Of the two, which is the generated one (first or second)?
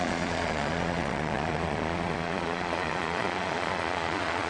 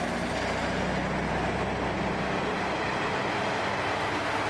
first